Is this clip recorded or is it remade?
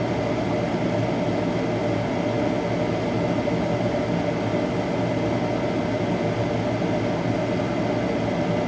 recorded